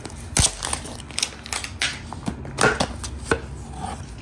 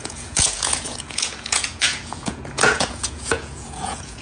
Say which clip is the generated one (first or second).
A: second